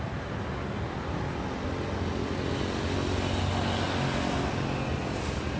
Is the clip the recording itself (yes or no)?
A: yes